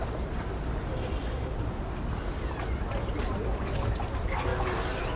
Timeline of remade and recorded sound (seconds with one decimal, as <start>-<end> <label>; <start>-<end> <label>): 0.0-5.2 recorded